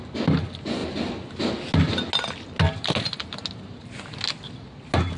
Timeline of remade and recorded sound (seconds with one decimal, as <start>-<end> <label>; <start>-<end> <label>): 0.0-5.2 recorded